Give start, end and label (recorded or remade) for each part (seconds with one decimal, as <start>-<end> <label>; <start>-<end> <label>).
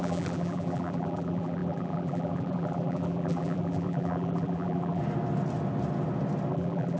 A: 0.0-5.0 remade; 5.0-6.5 recorded; 6.5-7.0 remade